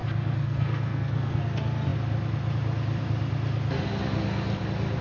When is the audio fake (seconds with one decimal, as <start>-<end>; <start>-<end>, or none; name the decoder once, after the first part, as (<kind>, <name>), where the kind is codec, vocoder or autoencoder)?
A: 0.0-1.4 (codec, SNAC)